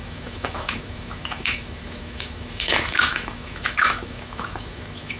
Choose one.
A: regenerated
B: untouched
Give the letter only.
A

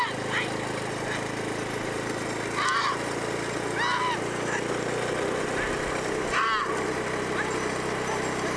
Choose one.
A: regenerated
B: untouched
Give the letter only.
B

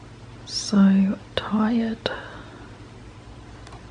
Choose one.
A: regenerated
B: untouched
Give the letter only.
B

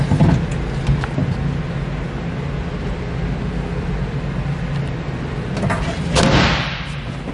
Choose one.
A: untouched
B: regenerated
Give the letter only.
A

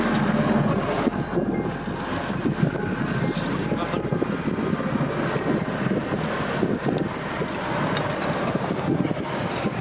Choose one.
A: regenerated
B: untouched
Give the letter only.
B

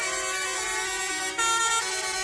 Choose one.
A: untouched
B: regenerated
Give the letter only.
A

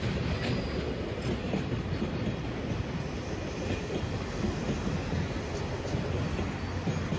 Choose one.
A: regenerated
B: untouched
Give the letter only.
B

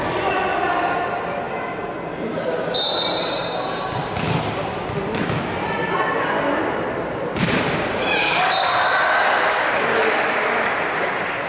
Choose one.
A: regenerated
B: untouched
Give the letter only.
B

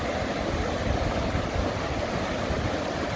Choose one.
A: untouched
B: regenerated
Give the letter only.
A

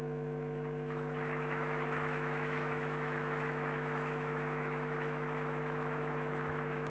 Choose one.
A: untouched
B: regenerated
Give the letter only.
B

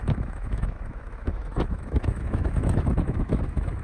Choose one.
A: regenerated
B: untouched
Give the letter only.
A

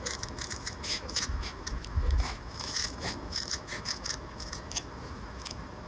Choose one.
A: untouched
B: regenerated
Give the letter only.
B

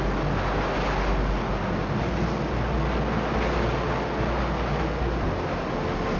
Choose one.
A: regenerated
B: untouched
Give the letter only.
B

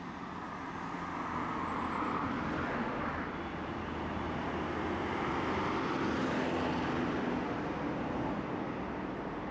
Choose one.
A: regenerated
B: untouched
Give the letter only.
B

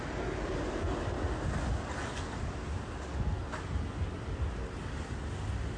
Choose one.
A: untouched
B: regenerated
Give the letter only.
A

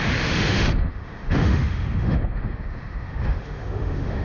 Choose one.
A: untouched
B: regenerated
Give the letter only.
B